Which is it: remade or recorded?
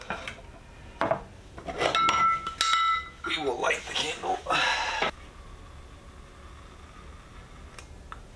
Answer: recorded